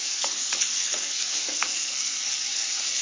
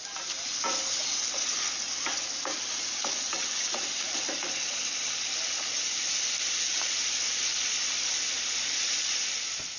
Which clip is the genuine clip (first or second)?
second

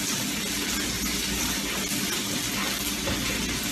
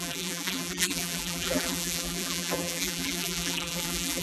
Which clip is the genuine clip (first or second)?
first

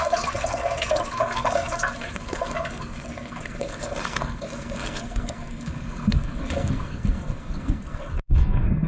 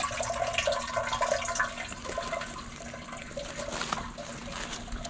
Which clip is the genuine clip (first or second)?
second